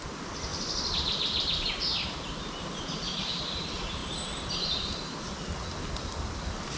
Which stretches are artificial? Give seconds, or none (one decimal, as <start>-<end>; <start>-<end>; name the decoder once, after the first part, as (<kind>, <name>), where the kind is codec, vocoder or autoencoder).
none

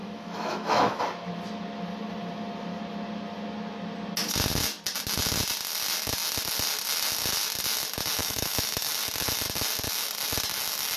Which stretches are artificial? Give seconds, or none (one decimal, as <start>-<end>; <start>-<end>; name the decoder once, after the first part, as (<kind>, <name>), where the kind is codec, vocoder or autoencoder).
0.0-1.0 (autoencoder, DAC-VAE); 8.2-8.9

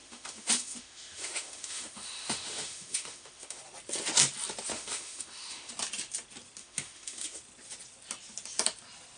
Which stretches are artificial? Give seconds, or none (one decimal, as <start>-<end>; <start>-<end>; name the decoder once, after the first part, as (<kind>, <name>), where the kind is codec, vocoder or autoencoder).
0.0-3.6 (autoencoder, DAC-VAE); 4.7-5.7; 6.6-7.4

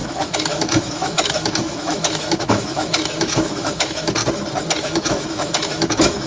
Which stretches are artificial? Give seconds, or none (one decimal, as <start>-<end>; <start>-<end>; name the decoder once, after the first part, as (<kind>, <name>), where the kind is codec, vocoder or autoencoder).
0.0-4.2 (autoencoder, DAC-VAE); 4.8-6.3

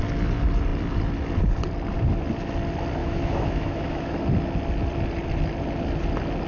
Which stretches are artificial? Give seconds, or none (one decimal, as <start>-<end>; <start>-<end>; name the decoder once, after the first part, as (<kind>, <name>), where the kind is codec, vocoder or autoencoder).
3.0-4.2 (autoencoder, DAC-VAE)